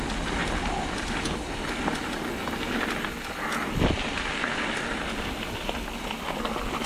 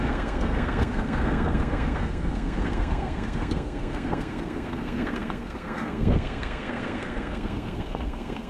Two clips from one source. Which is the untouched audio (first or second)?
first